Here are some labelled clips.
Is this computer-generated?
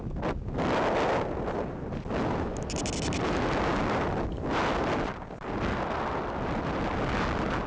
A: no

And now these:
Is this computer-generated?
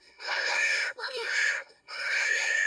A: yes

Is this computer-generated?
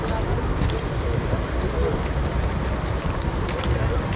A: no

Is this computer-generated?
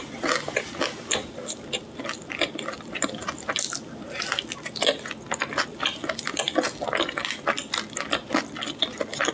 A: no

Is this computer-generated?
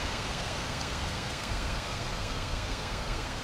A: yes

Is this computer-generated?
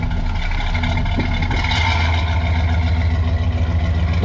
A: no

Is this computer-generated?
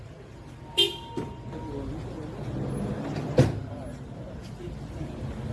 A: no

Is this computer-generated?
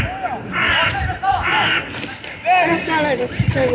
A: no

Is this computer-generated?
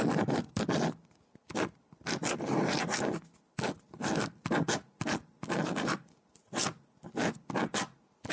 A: no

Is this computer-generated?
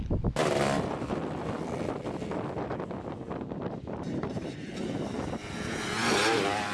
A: no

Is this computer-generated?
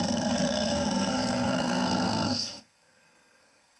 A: yes